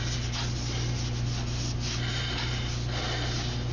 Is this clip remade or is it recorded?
recorded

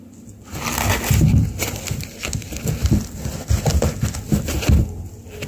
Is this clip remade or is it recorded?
recorded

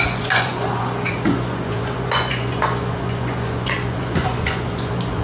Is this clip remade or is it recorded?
remade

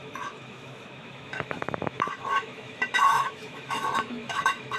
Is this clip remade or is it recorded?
remade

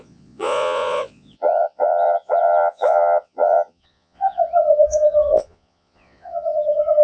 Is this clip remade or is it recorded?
remade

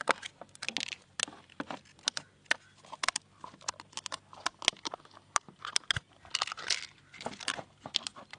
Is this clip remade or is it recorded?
recorded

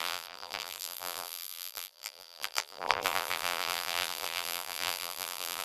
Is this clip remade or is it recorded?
remade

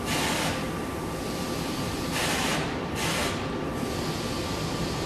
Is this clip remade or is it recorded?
remade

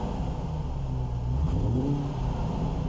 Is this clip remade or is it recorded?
recorded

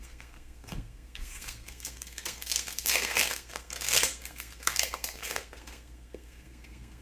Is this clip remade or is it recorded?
remade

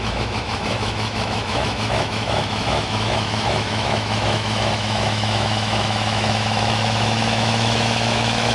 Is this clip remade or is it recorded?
remade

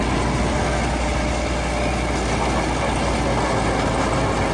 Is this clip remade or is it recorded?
recorded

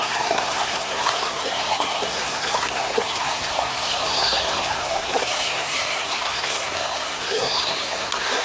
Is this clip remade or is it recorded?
remade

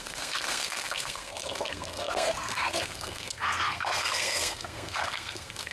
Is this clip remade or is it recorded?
remade